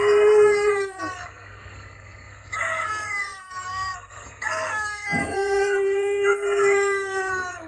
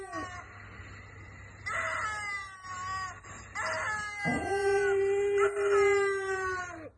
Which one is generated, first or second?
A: first